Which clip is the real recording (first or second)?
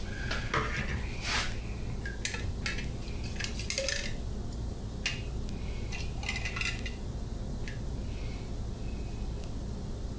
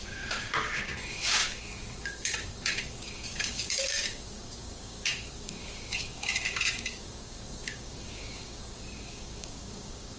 first